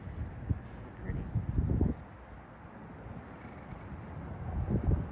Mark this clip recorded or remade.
recorded